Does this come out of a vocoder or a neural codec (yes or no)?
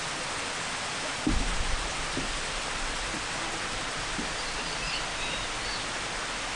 no